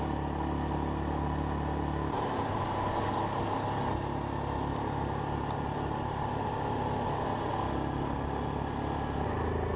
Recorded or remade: recorded